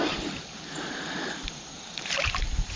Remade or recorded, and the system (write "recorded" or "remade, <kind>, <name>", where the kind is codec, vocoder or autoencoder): remade, vocoder, BigVGAN v2